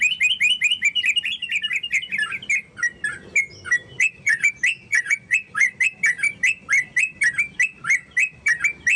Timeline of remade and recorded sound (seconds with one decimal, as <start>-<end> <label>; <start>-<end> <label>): 0.0-3.8 recorded; 3.8-4.5 remade; 4.5-4.9 recorded; 4.9-5.7 remade; 5.7-9.0 recorded